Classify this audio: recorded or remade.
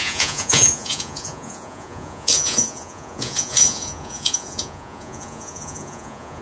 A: remade